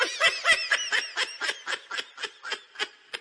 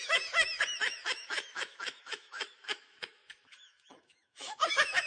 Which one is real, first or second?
first